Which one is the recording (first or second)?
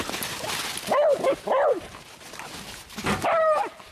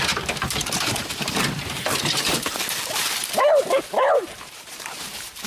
first